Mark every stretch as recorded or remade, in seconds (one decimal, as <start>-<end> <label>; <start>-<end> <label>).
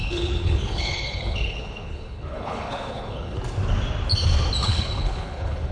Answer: 0.0-3.4 remade; 3.4-4.6 recorded; 4.6-5.7 remade